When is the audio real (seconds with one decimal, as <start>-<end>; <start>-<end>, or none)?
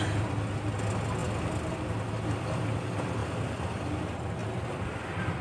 0.0-3.2; 3.9-4.4